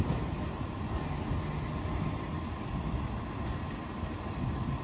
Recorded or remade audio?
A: recorded